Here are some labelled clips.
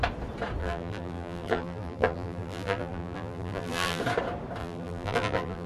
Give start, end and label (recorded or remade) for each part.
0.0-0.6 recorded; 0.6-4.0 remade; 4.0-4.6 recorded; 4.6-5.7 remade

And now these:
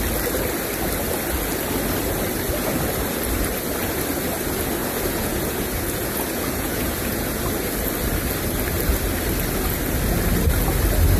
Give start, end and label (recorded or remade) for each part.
0.0-4.8 recorded; 4.8-7.4 remade; 7.4-11.2 recorded

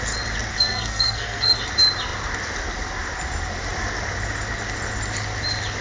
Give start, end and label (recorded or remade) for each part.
0.0-0.5 recorded; 0.5-1.6 remade; 1.6-5.8 recorded

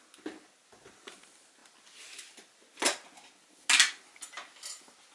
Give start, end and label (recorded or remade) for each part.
0.0-5.1 recorded